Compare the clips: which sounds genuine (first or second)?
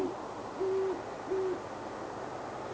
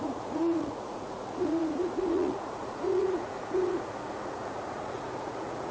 first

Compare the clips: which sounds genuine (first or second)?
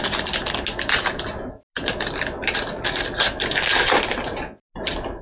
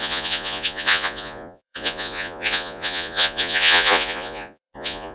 first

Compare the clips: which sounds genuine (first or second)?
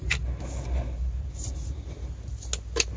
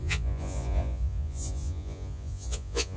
first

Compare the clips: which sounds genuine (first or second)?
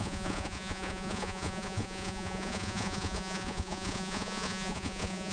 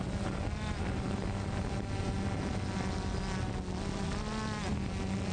second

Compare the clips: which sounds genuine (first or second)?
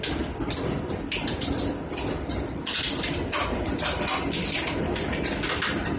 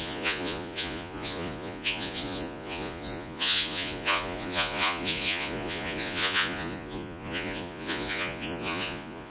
first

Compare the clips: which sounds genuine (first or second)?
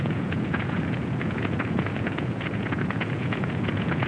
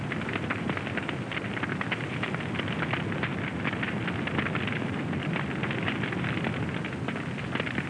second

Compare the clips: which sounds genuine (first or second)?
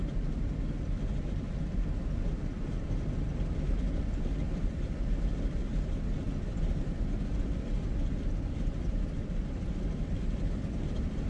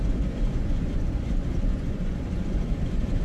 first